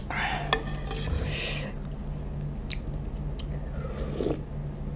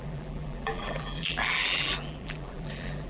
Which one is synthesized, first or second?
second